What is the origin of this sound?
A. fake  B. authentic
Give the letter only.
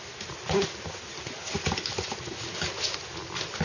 B